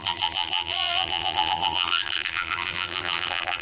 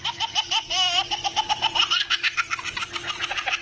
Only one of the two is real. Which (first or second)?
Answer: second